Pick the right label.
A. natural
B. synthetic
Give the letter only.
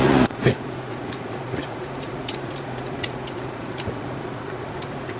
B